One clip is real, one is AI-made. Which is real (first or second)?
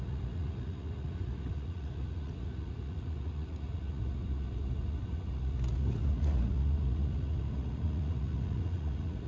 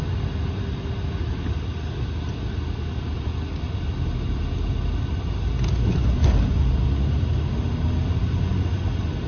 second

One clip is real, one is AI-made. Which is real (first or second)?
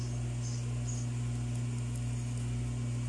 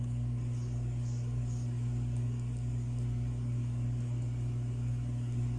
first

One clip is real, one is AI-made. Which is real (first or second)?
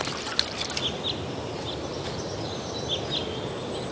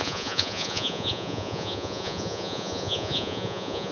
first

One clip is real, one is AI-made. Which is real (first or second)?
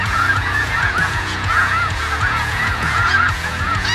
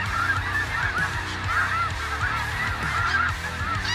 second